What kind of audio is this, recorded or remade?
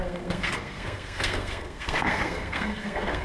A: remade